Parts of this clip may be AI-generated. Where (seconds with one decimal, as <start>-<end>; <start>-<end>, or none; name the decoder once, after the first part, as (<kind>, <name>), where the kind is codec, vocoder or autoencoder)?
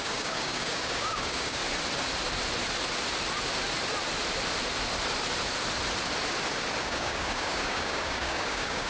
0.0-1.6 (codec, DAC); 6.8-8.9